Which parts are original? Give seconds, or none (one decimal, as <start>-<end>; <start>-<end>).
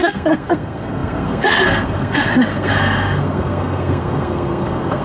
none